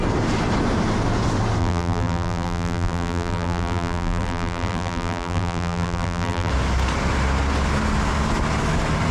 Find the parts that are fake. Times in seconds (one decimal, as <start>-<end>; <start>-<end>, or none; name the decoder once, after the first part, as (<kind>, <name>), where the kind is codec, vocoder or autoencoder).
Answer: 1.6-6.5 (vocoder, BigVGAN v2)